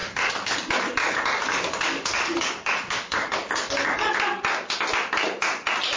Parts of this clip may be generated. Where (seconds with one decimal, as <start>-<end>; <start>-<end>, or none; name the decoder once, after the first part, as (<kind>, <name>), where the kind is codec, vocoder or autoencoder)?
0.0-0.6 (codec, DAC); 1.0-4.1